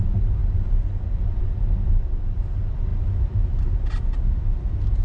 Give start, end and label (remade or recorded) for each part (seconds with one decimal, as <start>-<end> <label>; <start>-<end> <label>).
0.0-5.0 recorded